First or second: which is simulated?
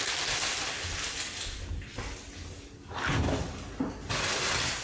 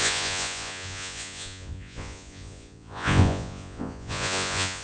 second